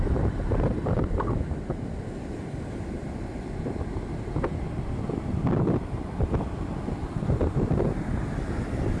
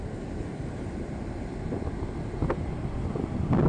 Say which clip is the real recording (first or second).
second